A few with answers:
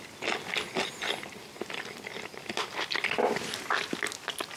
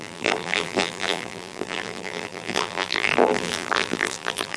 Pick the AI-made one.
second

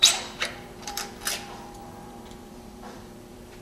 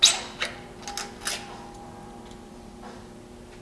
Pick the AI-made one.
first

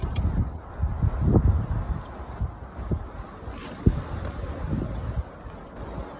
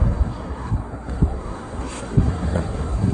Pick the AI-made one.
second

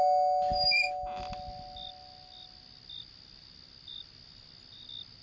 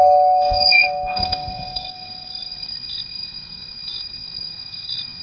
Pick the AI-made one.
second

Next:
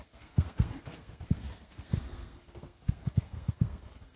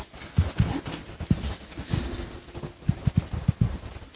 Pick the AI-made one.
first